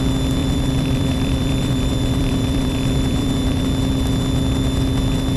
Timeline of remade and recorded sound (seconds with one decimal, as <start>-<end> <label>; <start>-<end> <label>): 0.0-0.4 recorded; 0.4-3.6 remade; 3.6-5.4 recorded